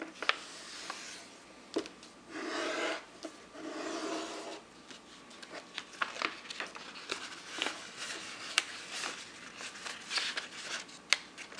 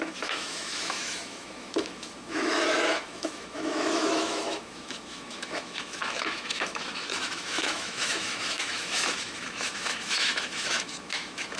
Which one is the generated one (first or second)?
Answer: second